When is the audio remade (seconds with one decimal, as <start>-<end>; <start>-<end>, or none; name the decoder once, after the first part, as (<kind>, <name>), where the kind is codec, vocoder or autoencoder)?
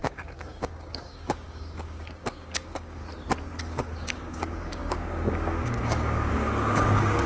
0.0-3.0 (codec, DAC); 3.6-7.3